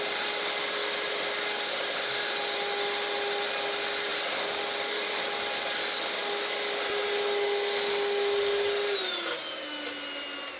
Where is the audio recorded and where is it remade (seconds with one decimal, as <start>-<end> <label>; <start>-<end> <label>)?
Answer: 0.0-10.6 recorded